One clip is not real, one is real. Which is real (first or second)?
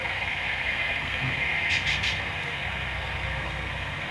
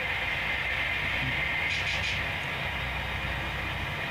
second